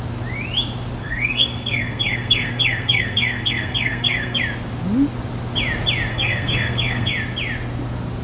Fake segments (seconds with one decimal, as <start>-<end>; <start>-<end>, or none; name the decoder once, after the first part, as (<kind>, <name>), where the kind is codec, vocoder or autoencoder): 1.0-4.4 (codec, SNAC); 6.1-7.1